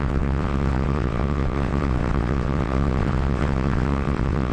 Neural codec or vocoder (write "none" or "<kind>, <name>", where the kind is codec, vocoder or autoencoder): vocoder, WaveNeXt